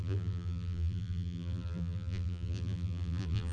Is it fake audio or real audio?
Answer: fake